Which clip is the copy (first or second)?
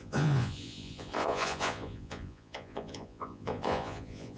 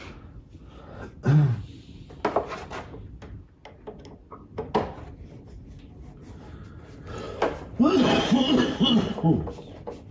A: first